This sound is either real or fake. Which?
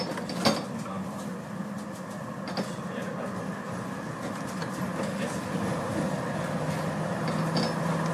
real